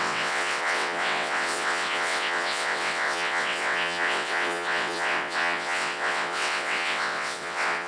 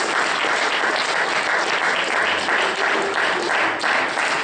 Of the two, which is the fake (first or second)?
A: first